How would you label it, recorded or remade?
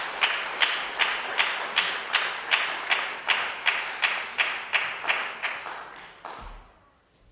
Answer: recorded